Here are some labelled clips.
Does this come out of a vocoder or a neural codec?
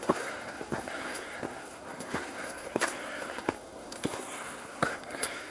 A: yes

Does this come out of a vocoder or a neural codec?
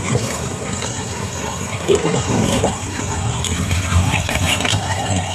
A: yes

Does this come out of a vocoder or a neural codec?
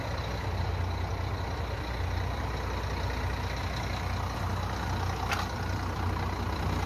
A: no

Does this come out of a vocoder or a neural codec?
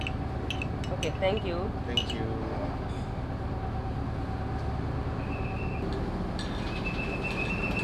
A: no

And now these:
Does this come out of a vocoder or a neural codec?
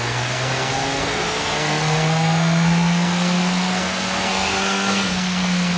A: yes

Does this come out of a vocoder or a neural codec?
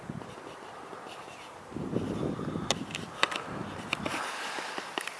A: no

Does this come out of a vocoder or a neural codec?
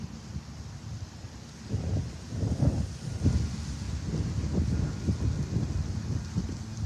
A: no